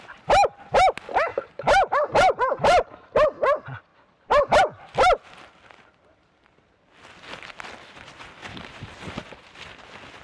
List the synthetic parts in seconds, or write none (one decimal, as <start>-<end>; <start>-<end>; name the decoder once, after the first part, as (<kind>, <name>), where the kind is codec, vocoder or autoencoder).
1.3-2.9 (vocoder, BigVGAN v2); 3.9-4.6; 8.4-9.2